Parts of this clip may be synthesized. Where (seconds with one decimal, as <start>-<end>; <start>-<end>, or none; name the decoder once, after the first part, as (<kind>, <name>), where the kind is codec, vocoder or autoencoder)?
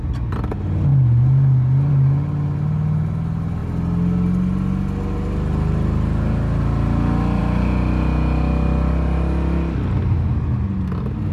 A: none